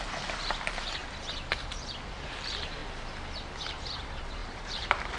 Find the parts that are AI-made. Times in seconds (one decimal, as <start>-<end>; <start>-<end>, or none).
0.0-1.0; 1.5-2.8; 3.6-5.2